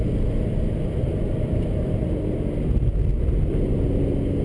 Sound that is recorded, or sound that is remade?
recorded